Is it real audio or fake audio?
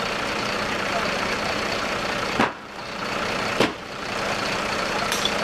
fake